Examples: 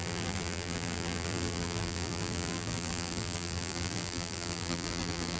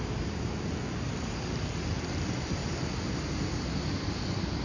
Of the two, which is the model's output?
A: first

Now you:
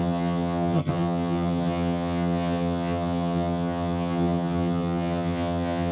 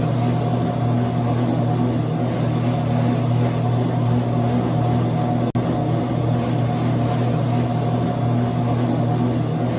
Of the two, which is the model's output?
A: first